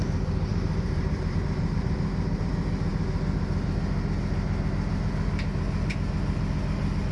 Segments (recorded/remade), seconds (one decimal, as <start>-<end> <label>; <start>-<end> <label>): 0.0-0.5 recorded; 0.5-2.5 remade; 2.5-7.1 recorded